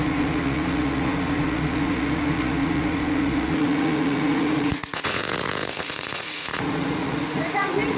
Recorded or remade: remade